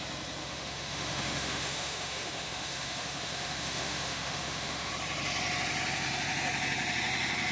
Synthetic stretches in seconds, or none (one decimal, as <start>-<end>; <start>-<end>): 0.4-4.9